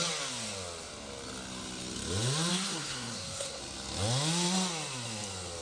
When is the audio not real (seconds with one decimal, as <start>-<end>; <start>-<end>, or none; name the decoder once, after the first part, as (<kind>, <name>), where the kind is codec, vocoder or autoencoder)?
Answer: 2.5-3.6 (codec, SNAC)